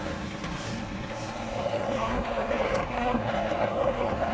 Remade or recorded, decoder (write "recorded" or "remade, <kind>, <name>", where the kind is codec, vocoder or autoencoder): remade, codec, SNAC